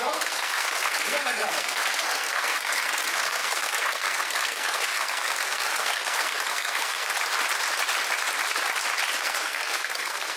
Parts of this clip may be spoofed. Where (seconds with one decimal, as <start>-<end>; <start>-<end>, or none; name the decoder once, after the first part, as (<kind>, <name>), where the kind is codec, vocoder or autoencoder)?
0.0-7.1 (codec, SNAC); 9.2-10.4